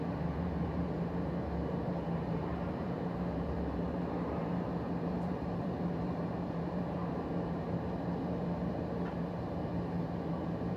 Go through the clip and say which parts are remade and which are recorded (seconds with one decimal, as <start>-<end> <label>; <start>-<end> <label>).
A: 0.0-9.7 remade; 9.7-10.3 recorded; 10.3-10.8 remade

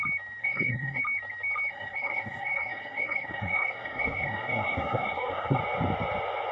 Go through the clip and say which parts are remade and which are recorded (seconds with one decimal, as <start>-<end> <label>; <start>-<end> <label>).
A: 0.0-0.4 recorded; 0.4-1.0 remade; 1.0-1.7 recorded; 1.7-5.6 remade; 5.6-6.5 recorded

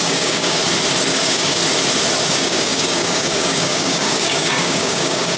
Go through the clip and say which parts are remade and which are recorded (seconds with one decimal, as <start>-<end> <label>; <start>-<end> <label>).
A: 0.0-0.6 remade; 0.6-1.1 recorded; 1.1-1.6 remade; 1.6-2.3 recorded; 2.3-5.4 remade

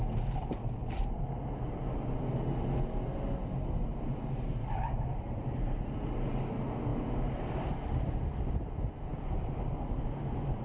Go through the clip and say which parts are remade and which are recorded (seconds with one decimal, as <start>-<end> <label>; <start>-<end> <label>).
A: 0.0-0.6 recorded; 0.6-1.3 remade; 1.3-6.9 recorded; 6.9-8.5 remade; 8.5-9.1 recorded; 9.1-9.7 remade; 9.7-10.6 recorded

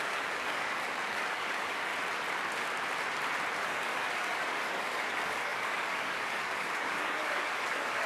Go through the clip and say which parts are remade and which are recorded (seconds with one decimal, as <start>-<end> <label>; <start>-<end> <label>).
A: 0.0-1.9 remade; 1.9-3.6 recorded; 3.6-8.1 remade